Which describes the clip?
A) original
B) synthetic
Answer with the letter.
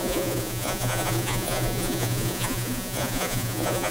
B